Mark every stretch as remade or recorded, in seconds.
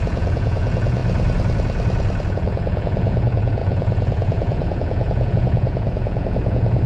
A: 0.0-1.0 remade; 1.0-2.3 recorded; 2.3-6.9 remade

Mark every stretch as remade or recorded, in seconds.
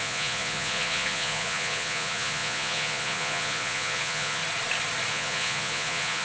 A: 0.0-4.4 remade; 4.4-5.1 recorded; 5.1-6.2 remade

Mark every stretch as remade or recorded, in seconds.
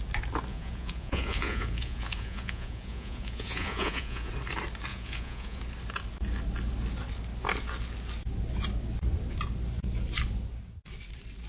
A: 0.0-0.5 recorded; 0.5-4.3 remade; 4.3-4.9 recorded; 4.9-5.6 remade; 5.6-11.5 recorded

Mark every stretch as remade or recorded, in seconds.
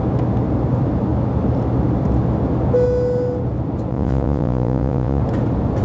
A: 0.0-3.9 recorded; 3.9-5.2 remade; 5.2-5.8 recorded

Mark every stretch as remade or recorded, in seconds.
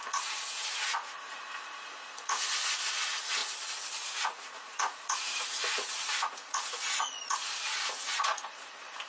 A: 0.0-3.4 remade; 3.4-4.2 recorded; 4.2-9.1 remade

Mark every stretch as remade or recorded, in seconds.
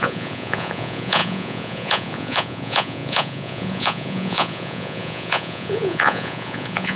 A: 0.0-7.0 remade